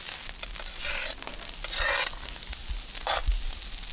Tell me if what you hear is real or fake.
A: real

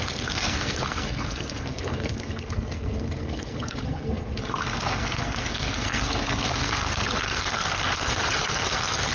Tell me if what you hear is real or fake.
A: fake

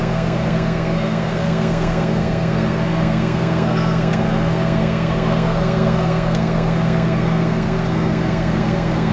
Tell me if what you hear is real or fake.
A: fake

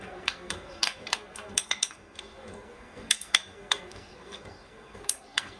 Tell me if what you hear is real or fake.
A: fake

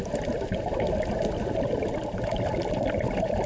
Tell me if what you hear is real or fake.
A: real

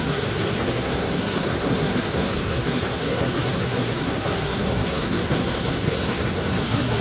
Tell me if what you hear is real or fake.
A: fake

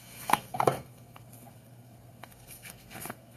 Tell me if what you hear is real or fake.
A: fake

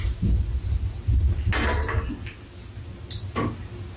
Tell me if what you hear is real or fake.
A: real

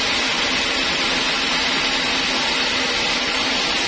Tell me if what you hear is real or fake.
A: real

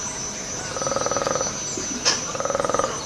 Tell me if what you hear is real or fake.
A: real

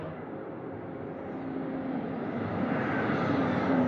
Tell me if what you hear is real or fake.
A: real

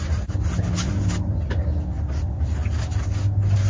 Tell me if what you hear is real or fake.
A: real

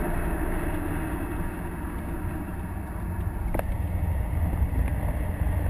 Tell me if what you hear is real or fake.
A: real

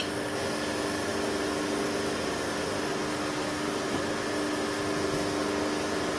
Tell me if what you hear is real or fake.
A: real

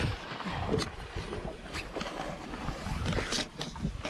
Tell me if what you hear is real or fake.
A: real